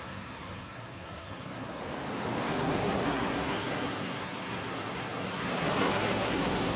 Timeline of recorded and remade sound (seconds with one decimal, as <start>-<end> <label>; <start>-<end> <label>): 0.0-1.8 remade; 1.8-2.4 recorded; 2.4-6.8 remade